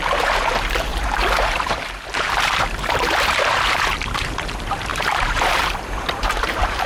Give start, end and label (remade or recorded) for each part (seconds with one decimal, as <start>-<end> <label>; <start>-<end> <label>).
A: 0.0-6.9 remade